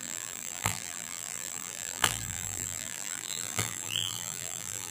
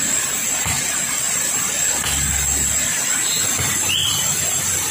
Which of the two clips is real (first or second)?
second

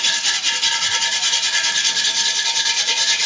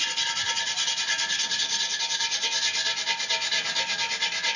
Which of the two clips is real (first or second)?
second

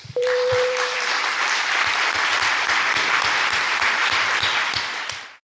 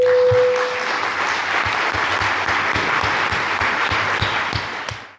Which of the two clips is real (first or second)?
second